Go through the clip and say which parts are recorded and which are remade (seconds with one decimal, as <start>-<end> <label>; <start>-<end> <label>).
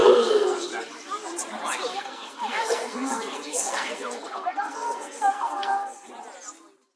0.0-0.7 remade; 0.7-1.9 recorded; 1.9-6.1 remade; 6.1-7.0 recorded